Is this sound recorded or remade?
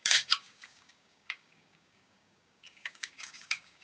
remade